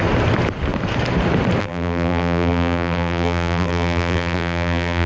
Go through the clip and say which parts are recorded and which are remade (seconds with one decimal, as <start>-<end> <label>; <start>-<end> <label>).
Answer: 0.0-1.6 recorded; 1.6-5.1 remade